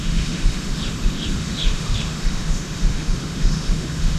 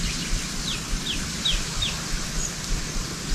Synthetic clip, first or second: first